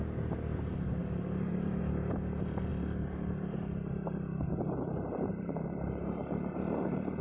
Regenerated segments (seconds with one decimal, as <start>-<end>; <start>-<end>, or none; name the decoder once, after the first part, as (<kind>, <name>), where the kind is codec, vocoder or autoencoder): 1.0-1.8 (vocoder, BigVGAN v2); 2.7-7.2